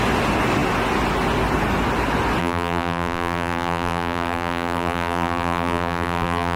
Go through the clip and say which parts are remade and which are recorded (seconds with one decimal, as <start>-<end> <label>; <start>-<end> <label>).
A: 0.0-2.4 recorded; 2.4-6.6 remade